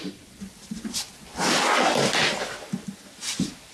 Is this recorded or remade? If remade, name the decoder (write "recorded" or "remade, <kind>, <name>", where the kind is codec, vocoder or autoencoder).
remade, vocoder, BigVGAN v2